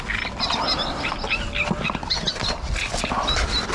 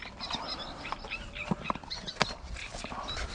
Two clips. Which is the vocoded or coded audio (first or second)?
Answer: second